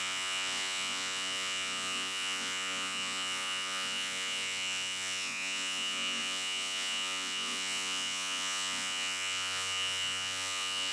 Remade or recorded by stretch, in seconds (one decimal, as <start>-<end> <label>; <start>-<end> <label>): 0.0-10.9 remade